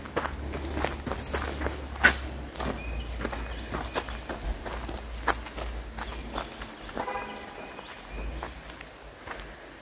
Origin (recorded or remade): recorded